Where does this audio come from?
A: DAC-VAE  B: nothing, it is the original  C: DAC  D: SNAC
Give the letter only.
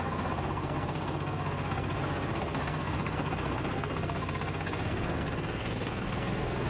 D